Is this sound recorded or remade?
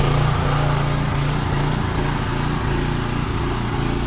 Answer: recorded